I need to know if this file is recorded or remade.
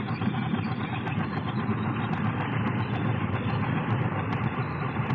recorded